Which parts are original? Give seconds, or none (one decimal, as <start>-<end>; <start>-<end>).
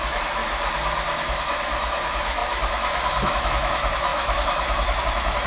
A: 0.4-1.3